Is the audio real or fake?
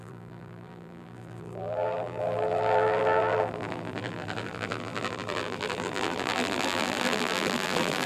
fake